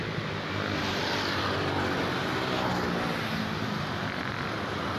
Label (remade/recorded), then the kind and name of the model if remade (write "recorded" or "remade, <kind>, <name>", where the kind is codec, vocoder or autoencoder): recorded